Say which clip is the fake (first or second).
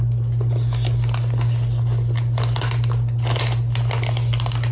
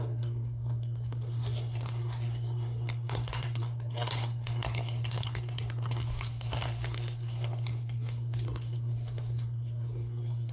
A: second